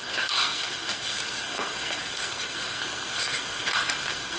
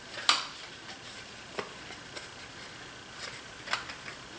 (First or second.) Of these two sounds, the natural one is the second